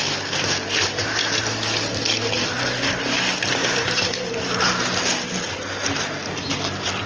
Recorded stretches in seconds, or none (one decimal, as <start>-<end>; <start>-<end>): 0.0-3.6; 4.3-7.1

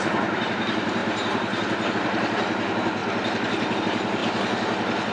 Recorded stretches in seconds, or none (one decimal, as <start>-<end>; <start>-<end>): 3.0-3.8; 4.2-5.1

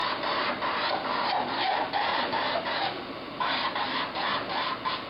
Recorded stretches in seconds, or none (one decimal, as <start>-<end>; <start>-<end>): 0.0-2.1; 3.1-5.1

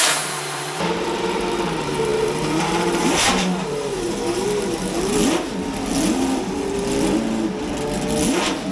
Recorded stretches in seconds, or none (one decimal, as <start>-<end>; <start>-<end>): 5.2-8.7

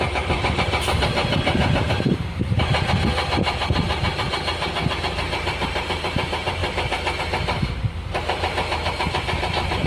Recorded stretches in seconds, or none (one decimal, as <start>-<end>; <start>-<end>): 6.6-7.2

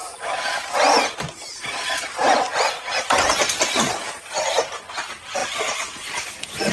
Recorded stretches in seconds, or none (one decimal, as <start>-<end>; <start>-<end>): 0.0-1.6

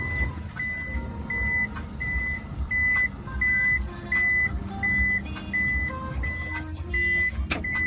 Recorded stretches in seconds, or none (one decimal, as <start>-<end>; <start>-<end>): 0.0-2.0; 2.7-7.9